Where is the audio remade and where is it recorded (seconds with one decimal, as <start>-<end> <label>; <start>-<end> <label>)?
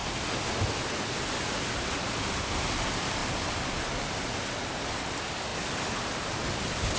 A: 0.0-7.0 recorded